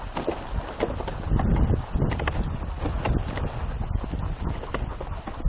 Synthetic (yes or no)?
no